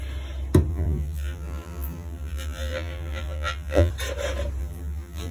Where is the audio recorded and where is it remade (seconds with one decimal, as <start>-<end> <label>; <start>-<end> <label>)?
0.0-0.7 recorded; 0.7-3.9 remade; 3.9-4.6 recorded; 4.6-5.3 remade

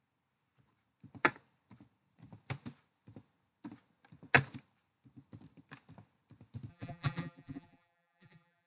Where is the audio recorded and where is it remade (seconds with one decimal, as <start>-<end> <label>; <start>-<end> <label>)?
0.0-6.7 recorded; 6.7-8.7 remade